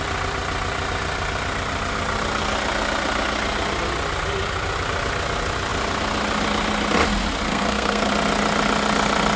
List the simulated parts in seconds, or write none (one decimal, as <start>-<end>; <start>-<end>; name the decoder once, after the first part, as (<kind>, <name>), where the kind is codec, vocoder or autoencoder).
7.5-8.1 (codec, SNAC)